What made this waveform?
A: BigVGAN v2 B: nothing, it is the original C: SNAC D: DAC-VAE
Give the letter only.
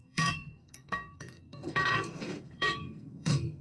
C